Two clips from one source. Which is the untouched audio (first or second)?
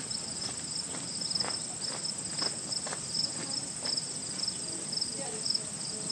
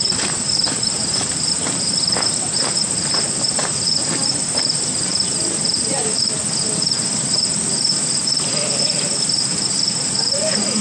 first